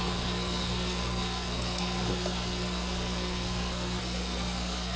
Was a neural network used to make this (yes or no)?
yes